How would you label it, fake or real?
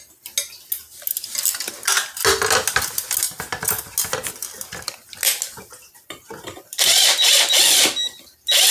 real